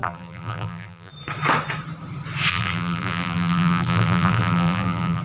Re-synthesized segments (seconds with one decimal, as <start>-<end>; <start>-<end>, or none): 0.0-1.1; 2.5-5.2